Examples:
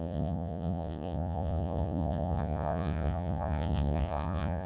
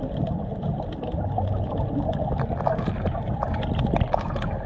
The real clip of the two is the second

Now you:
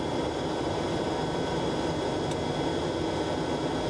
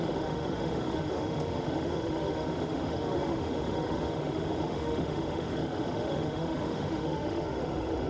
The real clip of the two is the first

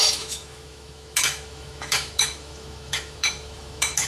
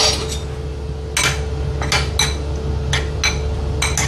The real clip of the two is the second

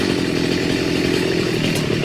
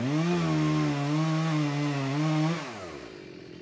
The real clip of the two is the second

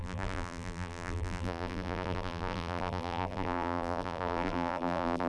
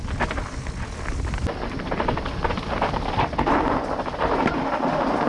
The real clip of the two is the second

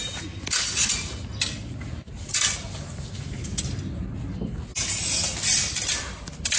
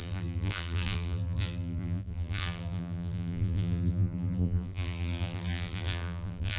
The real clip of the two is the first